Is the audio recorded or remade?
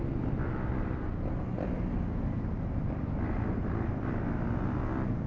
recorded